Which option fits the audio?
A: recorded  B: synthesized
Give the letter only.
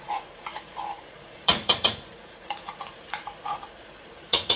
B